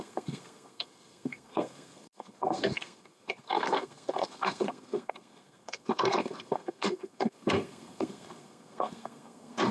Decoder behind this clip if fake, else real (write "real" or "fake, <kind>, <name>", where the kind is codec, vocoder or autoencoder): fake, codec, SNAC